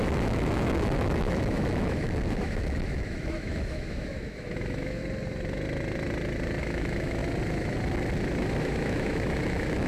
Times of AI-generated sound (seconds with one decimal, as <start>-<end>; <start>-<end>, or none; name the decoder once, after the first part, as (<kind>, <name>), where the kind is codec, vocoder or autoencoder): 0.0-5.0 (autoencoder, DAC-VAE); 6.6-7.2; 8.6-9.9